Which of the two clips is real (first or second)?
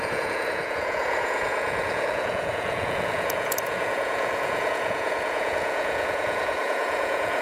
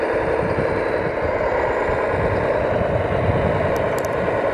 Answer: second